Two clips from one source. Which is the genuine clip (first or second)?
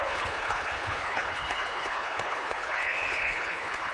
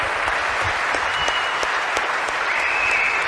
second